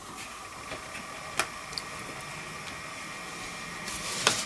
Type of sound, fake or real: real